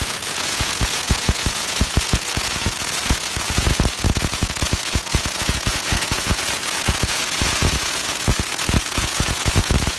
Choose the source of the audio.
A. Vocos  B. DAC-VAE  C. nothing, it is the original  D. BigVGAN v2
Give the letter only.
A